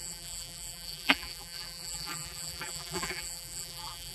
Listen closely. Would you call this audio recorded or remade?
remade